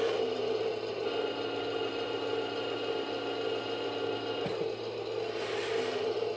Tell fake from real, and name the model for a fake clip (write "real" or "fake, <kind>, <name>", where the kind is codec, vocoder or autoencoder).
real